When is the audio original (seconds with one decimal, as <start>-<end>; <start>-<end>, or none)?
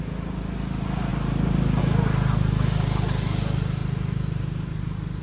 0.0-1.1; 1.8-5.2